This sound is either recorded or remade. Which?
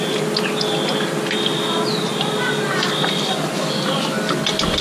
recorded